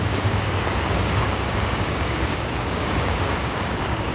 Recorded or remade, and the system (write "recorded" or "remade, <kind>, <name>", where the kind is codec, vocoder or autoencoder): remade, codec, DAC